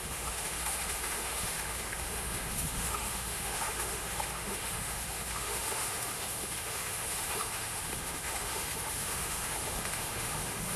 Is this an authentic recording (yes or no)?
no